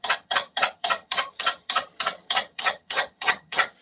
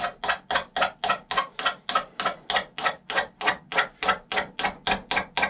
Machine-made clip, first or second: first